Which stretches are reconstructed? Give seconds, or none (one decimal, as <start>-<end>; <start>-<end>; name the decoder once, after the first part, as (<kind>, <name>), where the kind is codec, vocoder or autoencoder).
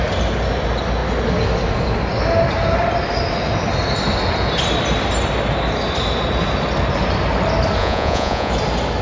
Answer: 7.8-8.5 (vocoder, Vocos)